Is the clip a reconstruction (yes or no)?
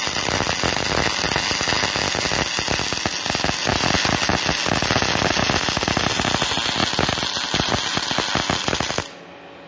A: no